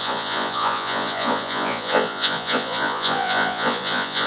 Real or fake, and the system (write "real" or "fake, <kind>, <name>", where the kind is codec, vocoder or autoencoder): fake, vocoder, Vocos